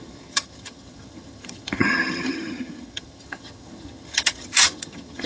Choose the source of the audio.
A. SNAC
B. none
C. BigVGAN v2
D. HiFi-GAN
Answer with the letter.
D